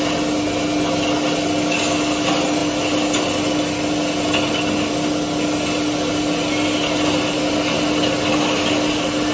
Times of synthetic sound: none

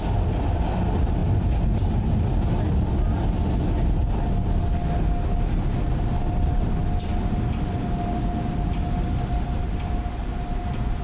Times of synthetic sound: none

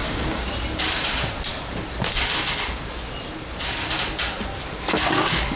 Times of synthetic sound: 0.0-0.5

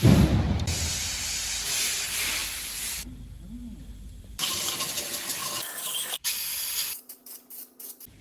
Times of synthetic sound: 5.4-6.2

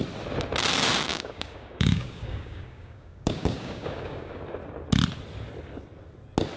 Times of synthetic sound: 1.1-4.4

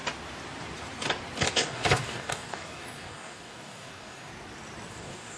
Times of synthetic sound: 1.5-4.3; 4.9-5.4

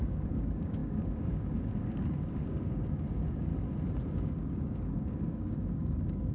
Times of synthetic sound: 0.0-3.5; 4.1-6.3

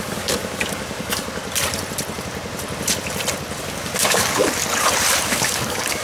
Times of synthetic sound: 0.0-1.4; 3.6-4.4; 5.2-6.0